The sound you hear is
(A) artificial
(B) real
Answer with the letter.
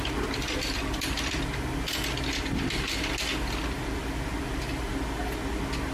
B